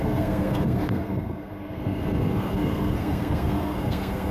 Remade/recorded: remade